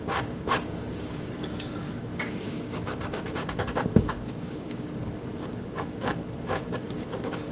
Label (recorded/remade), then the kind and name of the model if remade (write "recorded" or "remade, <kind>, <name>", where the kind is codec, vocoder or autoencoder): remade, codec, DAC